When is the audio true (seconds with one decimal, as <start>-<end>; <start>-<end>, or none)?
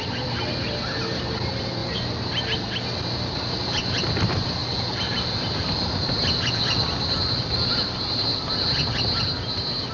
0.0-9.9